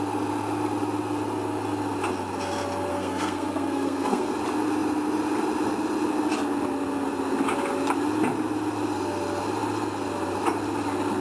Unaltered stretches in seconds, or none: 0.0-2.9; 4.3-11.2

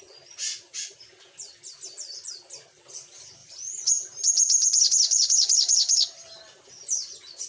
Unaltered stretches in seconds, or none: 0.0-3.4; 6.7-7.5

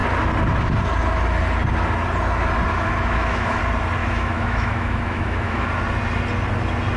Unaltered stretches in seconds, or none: 0.0-2.7; 3.6-4.0; 5.7-7.0

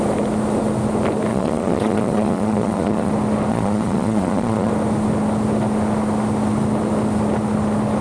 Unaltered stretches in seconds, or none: 0.0-1.3; 3.1-3.5; 4.7-8.0

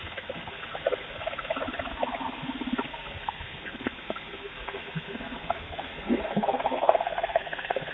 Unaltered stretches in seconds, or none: 0.6-2.9

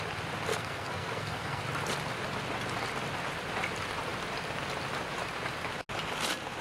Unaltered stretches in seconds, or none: 0.0-0.5; 1.6-6.6

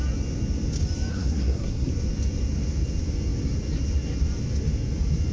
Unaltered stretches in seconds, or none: 0.0-1.1; 1.9-5.3

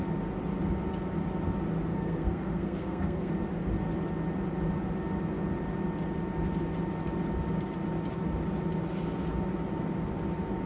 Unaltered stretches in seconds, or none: 0.0-1.9; 3.3-10.7